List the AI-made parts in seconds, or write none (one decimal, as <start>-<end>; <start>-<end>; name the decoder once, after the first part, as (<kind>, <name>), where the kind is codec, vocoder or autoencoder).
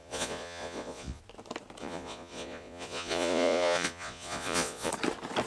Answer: 0.0-1.2 (vocoder, Vocos); 1.8-4.9